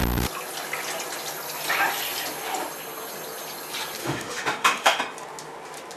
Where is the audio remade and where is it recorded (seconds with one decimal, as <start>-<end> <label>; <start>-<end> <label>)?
0.0-4.0 recorded; 4.0-5.0 remade; 5.0-6.0 recorded